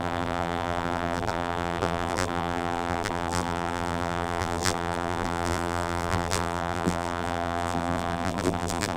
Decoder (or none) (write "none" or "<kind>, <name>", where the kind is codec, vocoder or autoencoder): vocoder, BigVGAN v2